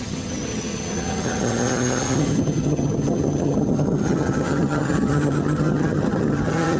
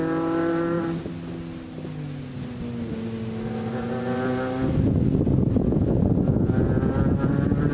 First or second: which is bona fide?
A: second